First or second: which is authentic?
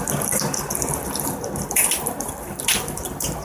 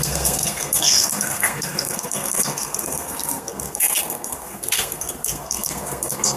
first